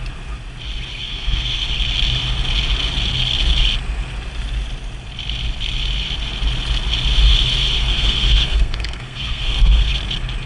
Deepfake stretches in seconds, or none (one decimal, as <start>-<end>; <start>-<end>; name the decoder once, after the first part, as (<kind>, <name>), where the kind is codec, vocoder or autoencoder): 1.0-1.7 (codec, SNAC); 7.8-9.9